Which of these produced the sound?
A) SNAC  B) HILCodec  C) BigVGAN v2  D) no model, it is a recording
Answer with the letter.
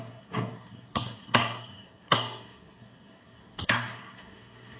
A